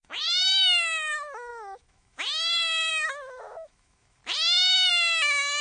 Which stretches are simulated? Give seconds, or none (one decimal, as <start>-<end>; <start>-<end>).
0.0-4.2; 4.9-5.6